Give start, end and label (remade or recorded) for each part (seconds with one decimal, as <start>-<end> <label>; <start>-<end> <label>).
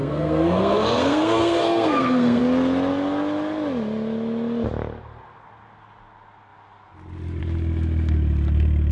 0.0-2.4 remade; 2.4-8.9 recorded